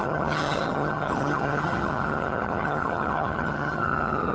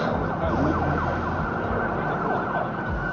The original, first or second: second